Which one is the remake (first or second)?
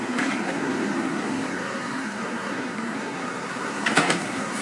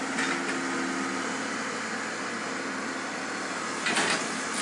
first